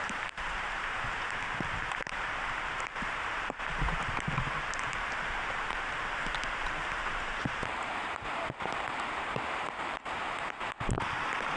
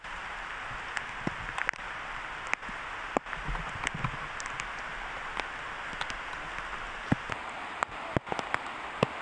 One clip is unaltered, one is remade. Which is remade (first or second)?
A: first